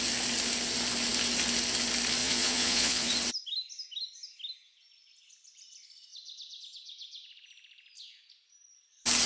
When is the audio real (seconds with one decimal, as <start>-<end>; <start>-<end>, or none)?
0.0-2.2; 3.1-9.3